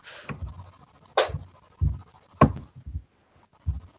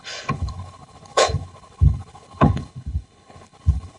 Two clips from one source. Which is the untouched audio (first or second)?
first